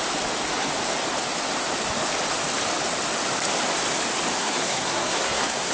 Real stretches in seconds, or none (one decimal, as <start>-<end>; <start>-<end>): 0.0-4.4